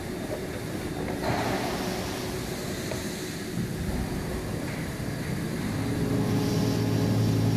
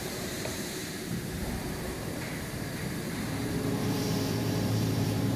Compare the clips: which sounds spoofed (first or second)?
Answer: second